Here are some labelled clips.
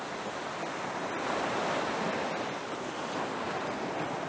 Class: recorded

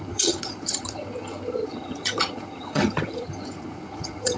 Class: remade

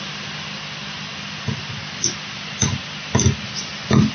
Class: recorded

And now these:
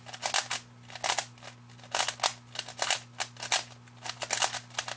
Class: recorded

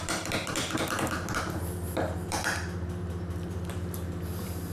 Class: remade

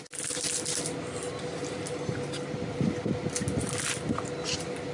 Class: recorded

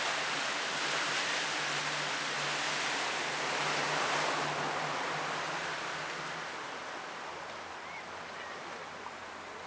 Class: recorded